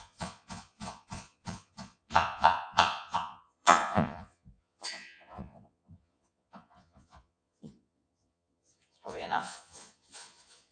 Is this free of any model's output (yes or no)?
no